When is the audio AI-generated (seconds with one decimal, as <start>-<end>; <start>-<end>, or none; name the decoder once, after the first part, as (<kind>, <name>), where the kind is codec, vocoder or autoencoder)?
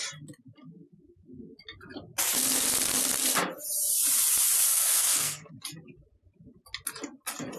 4.7-5.5 (codec, SNAC)